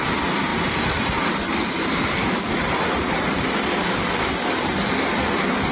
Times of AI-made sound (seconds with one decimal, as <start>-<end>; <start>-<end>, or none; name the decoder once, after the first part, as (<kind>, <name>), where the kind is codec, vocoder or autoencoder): 0.5-3.9 (vocoder, BigVGAN v2)